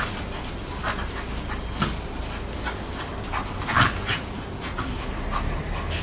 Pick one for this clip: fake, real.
real